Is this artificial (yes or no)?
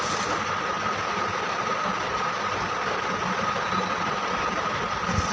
no